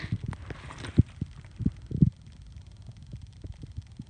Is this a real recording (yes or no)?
yes